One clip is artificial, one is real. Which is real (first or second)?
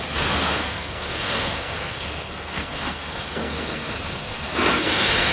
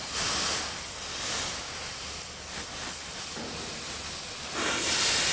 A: second